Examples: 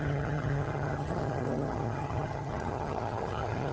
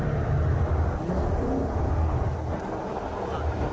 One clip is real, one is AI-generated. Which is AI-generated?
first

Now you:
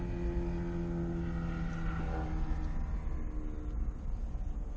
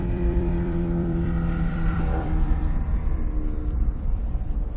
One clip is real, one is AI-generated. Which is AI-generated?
second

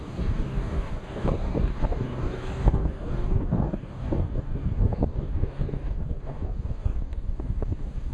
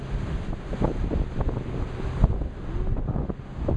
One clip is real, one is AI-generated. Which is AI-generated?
first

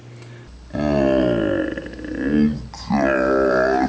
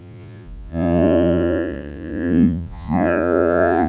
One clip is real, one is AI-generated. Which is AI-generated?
second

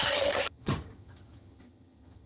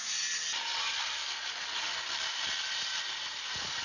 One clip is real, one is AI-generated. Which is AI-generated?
first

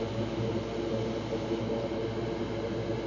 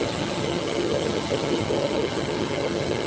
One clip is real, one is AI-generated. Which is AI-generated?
second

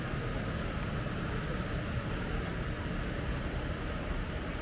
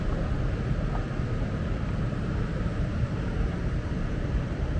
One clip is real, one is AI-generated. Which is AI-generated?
second